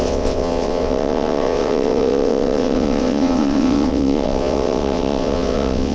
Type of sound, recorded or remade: remade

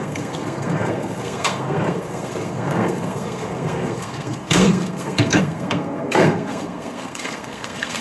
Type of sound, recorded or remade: remade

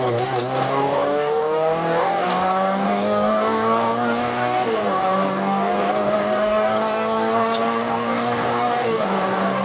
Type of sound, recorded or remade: remade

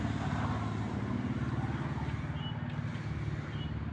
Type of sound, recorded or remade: recorded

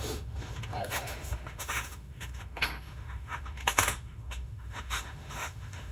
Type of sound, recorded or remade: remade